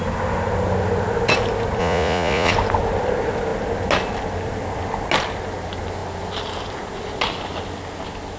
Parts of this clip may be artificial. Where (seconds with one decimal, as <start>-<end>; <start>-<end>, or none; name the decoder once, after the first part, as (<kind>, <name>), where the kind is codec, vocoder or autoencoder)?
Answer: 1.8-2.5 (vocoder, Vocos)